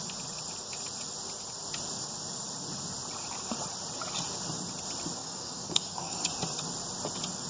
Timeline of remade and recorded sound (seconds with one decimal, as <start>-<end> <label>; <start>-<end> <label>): 0.0-5.2 recorded; 5.2-6.3 remade; 6.3-7.5 recorded